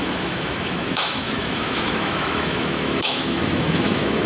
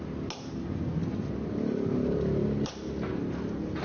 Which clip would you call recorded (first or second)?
second